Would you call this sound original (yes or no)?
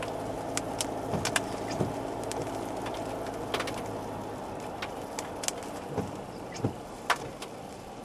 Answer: yes